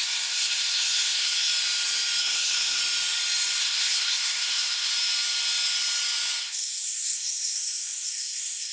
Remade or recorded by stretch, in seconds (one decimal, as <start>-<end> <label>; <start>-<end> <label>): 0.0-1.5 remade; 1.5-2.2 recorded; 2.2-2.8 remade; 2.8-3.6 recorded; 3.6-4.9 remade; 4.9-6.4 recorded; 6.4-8.7 remade